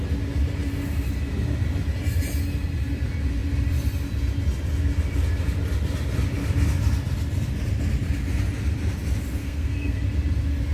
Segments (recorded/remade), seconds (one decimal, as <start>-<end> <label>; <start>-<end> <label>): 0.0-9.4 recorded; 9.4-10.0 remade; 10.0-10.7 recorded